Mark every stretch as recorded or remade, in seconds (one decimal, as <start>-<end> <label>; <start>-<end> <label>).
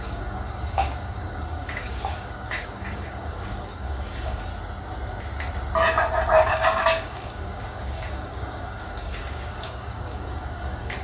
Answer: 0.0-4.5 remade; 4.5-6.5 recorded; 6.5-11.0 remade